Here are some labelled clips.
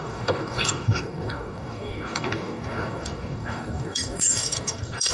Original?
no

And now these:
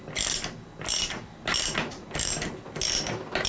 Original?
yes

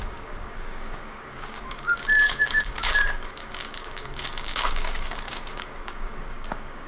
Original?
no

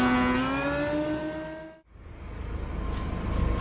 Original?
yes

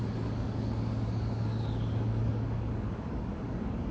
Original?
no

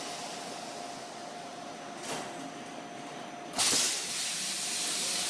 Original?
yes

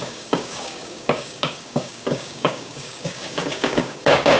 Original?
no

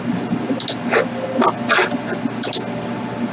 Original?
yes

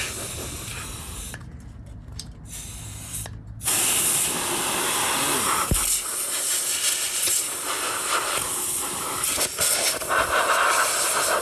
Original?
yes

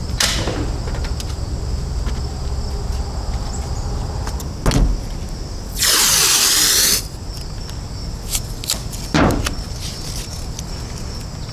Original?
yes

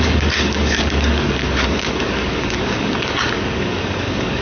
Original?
no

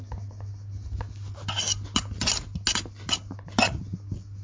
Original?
yes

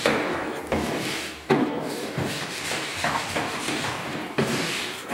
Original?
no